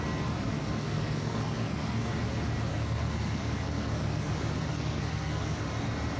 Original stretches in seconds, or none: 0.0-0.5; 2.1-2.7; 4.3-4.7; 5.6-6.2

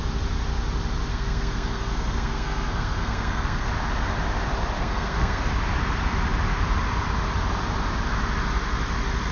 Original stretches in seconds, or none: 0.0-1.1; 3.7-4.8; 5.5-9.3

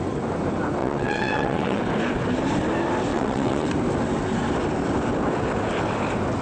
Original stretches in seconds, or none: 0.0-0.8; 1.8-3.1; 3.7-6.4

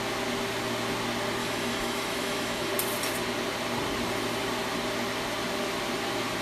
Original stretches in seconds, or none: 0.0-1.4; 2.7-6.4